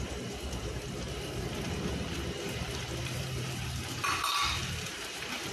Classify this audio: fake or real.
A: fake